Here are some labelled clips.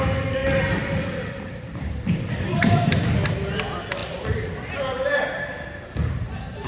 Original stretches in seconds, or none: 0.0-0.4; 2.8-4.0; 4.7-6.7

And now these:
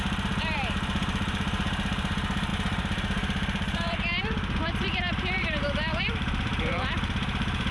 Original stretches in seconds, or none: none